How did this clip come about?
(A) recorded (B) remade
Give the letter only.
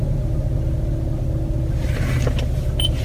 A